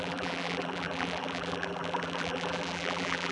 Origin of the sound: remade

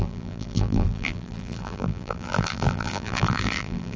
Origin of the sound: remade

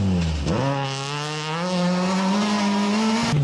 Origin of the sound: recorded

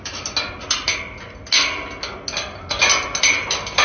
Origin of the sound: recorded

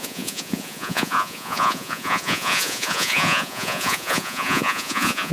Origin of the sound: remade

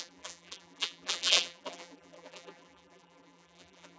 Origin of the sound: remade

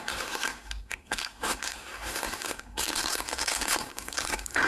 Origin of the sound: remade